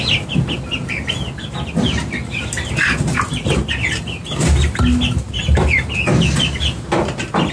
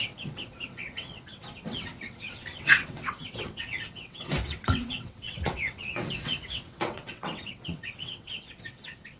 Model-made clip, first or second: second